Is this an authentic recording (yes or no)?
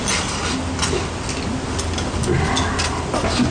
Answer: yes